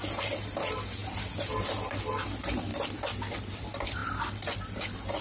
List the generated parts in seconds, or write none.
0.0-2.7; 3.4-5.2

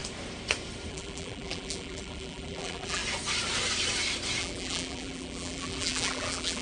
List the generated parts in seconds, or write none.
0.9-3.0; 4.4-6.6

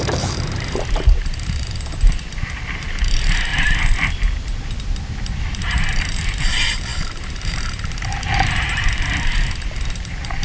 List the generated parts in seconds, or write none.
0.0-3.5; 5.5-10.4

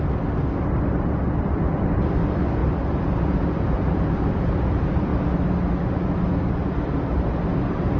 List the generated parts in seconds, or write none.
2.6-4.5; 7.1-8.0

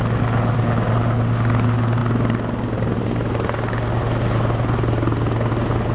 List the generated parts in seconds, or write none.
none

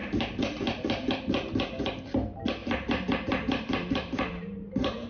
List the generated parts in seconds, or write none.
0.0-1.1; 2.6-5.1